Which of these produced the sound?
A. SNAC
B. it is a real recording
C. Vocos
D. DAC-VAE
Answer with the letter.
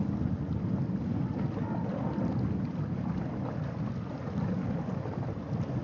B